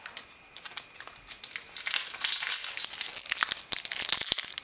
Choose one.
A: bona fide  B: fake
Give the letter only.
A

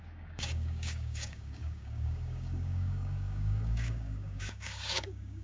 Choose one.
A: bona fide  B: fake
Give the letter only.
B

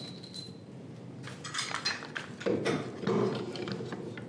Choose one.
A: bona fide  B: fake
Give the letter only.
A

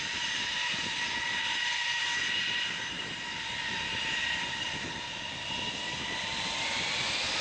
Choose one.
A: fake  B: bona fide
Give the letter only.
B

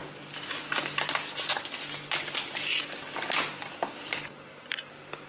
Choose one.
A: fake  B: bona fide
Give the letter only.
B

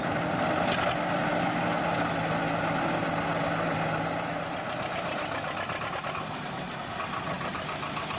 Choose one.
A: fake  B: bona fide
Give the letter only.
B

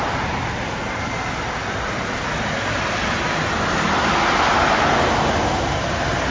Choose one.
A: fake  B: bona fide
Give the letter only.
B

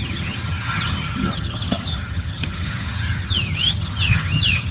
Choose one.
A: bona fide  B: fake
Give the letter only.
B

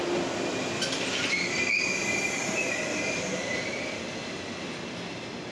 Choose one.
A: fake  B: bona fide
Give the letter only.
B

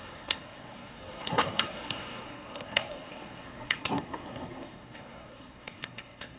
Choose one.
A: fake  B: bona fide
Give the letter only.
A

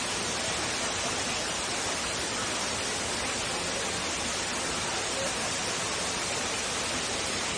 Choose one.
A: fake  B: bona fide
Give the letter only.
B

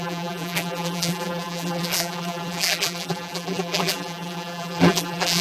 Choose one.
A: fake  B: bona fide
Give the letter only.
A